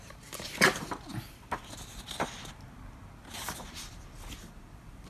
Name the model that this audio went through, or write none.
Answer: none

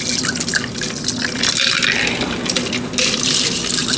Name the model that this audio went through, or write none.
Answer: none